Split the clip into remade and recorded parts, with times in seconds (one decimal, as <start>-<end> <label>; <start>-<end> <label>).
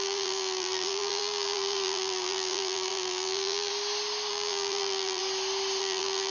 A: 0.0-3.7 remade; 3.7-4.3 recorded; 4.3-5.2 remade; 5.2-5.8 recorded; 5.8-6.3 remade